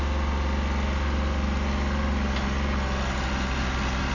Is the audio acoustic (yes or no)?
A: yes